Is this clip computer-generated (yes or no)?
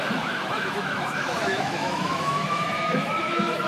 yes